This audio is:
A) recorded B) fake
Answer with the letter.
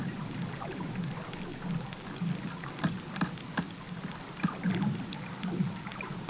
A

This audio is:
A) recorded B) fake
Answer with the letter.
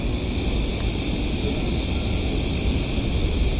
A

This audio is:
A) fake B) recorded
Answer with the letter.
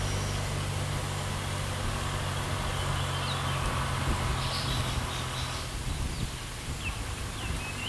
B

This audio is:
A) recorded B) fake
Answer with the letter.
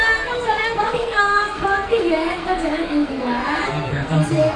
B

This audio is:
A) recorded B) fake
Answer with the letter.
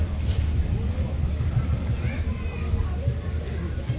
A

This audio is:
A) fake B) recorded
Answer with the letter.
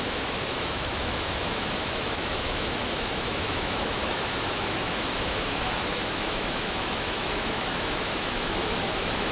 A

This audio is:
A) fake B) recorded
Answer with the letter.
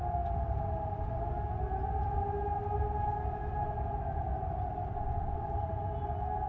B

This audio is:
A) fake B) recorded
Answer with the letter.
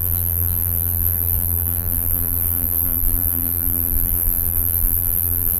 A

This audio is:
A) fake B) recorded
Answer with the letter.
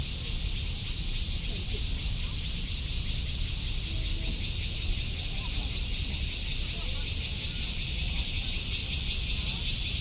B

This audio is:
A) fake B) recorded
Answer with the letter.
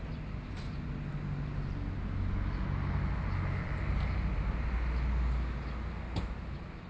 B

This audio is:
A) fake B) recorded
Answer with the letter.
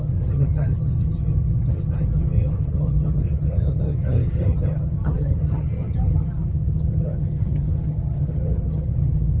A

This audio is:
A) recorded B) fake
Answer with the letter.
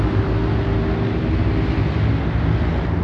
A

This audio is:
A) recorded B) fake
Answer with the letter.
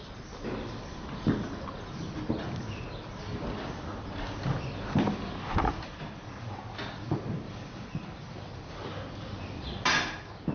A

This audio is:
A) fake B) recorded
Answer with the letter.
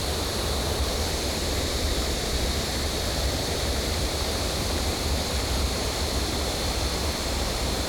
A